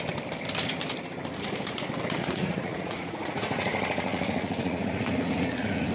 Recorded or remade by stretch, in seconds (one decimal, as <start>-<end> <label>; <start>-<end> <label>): 0.0-2.2 recorded; 2.2-5.9 remade